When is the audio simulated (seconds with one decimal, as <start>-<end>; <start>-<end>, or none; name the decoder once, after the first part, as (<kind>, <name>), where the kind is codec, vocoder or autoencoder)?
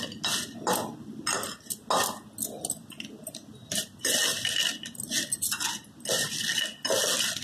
none